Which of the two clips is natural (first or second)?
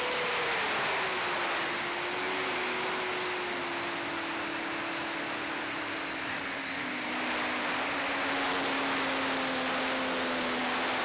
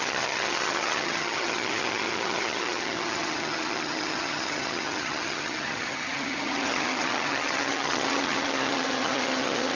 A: first